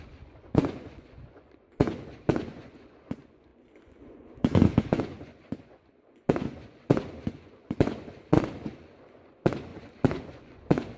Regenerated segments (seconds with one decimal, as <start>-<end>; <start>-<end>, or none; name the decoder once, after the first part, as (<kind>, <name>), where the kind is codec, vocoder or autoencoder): 0.0-11.0 (vocoder, Vocos)